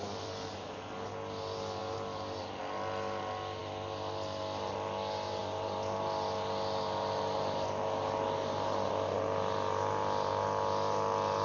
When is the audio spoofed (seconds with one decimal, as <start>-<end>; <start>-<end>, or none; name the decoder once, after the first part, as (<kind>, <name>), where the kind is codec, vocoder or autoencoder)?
none

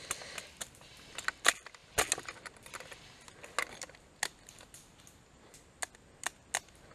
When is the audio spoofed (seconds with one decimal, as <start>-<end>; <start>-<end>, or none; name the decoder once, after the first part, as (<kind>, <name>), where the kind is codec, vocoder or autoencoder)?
none

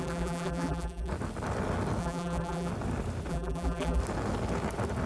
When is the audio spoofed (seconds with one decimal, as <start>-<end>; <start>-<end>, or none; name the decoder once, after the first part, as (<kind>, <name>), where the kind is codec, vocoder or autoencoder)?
0.0-1.1 (vocoder, BigVGAN v2); 2.0-2.7; 3.3-4.0

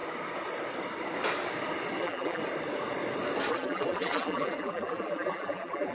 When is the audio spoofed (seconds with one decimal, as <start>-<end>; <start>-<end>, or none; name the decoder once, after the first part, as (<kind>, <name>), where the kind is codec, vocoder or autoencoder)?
2.0-2.4 (vocoder, BigVGAN v2); 3.5-5.9

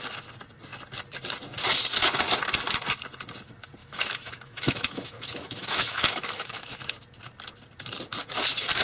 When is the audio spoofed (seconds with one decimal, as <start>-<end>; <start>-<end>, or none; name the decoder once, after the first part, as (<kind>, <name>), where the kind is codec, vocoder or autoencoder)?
3.8-6.8 (autoencoder, DAC-VAE)

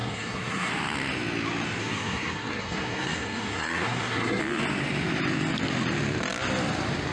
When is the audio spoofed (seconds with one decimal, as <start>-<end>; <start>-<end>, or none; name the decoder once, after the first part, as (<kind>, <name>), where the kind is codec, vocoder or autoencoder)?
0.0-0.7 (codec, SNAC); 1.8-4.4

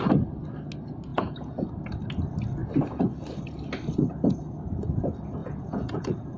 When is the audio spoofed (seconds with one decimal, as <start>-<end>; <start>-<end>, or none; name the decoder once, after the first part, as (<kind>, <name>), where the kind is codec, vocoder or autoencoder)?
1.1-1.7 (vocoder, Vocos); 5.4-6.4

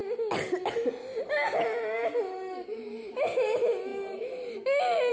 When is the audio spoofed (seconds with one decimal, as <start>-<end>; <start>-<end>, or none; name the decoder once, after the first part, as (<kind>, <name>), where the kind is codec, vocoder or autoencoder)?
none